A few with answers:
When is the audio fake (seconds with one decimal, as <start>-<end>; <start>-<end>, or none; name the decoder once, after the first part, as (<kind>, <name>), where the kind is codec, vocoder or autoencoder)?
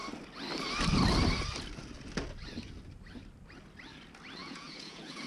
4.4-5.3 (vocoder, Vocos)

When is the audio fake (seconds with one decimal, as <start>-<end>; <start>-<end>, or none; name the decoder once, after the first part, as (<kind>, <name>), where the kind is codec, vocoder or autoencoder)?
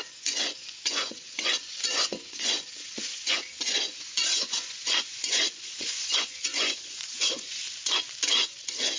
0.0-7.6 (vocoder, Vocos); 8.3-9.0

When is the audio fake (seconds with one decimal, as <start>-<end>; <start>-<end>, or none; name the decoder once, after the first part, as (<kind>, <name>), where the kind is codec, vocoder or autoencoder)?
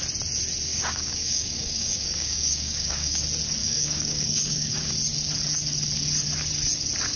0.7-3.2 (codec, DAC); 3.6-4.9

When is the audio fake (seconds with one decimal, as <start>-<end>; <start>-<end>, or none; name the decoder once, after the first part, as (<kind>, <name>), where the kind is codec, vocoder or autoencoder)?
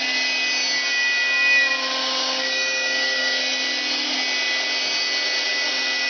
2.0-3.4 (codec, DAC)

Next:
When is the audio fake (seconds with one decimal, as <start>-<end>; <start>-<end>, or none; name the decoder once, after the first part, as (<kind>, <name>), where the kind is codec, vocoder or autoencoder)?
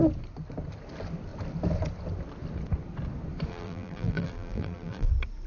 3.5-5.1 (vocoder, BigVGAN v2)